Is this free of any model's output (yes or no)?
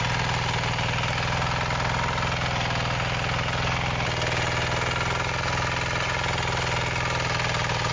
yes